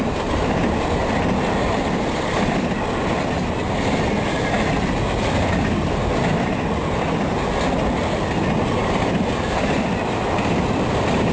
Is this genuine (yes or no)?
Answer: yes